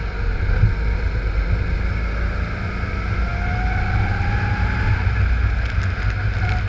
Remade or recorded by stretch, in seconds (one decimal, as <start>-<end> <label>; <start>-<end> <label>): 0.0-6.7 recorded